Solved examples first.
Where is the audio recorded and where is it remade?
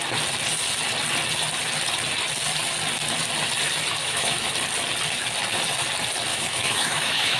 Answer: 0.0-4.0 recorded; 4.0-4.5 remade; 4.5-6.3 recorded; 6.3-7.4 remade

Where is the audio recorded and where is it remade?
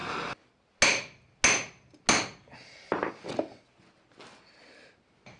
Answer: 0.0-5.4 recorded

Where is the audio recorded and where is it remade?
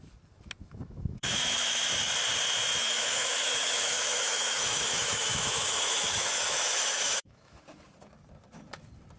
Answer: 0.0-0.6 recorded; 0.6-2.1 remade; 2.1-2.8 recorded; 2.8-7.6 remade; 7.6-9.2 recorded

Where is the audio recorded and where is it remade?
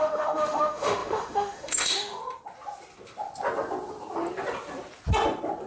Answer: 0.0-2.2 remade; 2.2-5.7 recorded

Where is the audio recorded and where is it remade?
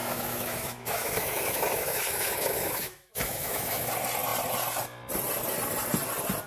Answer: 0.0-3.9 remade; 3.9-6.5 recorded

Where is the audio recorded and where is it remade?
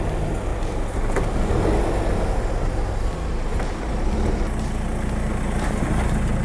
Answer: 0.0-6.4 recorded